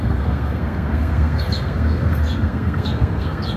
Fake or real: fake